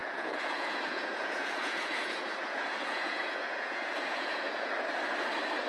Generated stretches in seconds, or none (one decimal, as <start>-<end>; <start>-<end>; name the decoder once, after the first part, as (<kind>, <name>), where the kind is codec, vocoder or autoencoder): 0.0-4.7 (vocoder, Vocos)